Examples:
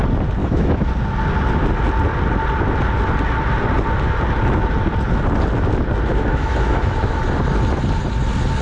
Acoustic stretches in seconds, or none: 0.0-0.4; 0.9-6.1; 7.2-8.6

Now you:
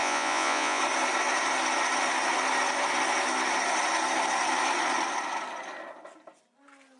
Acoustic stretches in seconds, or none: 0.8-7.0

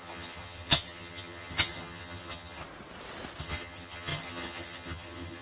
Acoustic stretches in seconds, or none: 2.6-3.4